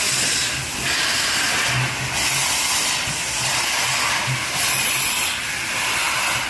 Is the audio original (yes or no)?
yes